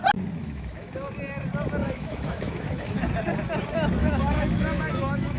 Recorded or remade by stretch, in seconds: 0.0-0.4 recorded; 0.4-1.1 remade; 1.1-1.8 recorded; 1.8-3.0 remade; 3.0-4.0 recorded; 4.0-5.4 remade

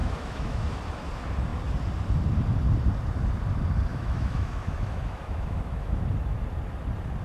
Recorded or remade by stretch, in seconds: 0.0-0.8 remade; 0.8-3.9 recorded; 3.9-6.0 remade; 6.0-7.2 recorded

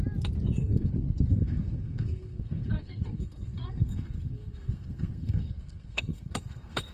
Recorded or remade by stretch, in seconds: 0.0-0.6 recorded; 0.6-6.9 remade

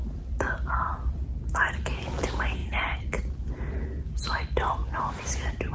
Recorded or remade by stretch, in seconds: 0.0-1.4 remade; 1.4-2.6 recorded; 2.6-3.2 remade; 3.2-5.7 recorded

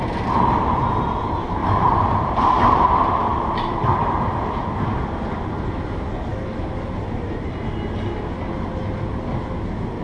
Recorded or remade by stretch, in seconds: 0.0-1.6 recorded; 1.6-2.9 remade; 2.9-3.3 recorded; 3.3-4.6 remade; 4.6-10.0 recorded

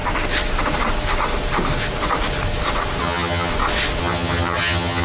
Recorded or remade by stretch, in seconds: 0.0-3.0 recorded; 3.0-3.5 remade; 3.5-4.0 recorded; 4.0-5.0 remade

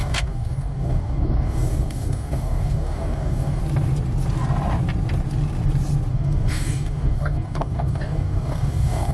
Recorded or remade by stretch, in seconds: 0.0-3.6 remade; 3.6-6.1 recorded; 6.1-9.1 remade